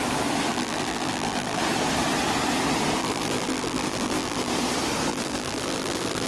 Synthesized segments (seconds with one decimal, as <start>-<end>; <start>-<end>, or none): 0.5-1.6; 3.0-4.5; 5.1-6.3